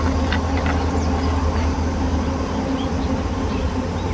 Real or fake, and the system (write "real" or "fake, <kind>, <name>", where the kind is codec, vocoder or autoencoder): real